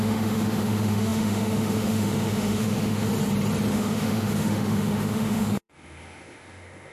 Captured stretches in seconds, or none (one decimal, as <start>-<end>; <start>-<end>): 3.1-3.7